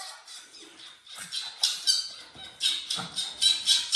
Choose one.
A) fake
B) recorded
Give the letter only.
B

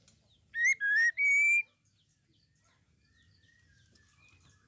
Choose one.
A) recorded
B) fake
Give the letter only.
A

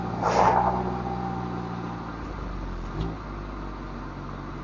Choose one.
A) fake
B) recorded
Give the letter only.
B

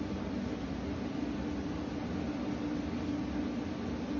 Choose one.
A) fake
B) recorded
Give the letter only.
B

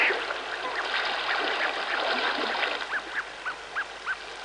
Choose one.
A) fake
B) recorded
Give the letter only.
B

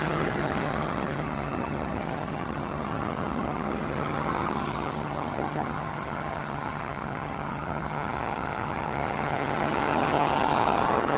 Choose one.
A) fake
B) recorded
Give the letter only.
A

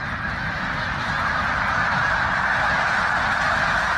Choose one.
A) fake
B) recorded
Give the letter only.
B